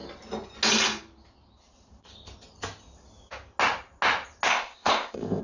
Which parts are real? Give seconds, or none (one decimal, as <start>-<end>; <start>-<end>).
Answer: 0.0-4.5